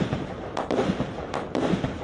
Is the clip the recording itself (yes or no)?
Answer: no